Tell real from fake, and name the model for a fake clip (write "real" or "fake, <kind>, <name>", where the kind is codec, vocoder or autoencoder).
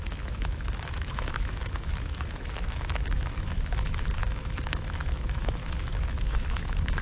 fake, autoencoder, DAC-VAE